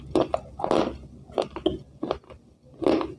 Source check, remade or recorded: recorded